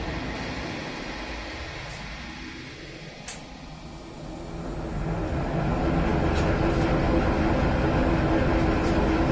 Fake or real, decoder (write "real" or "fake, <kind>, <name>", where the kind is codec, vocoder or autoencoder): real